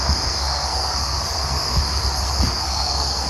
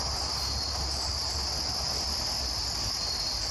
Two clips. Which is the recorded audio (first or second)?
second